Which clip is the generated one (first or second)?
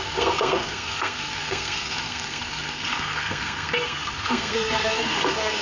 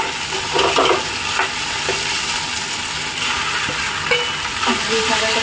first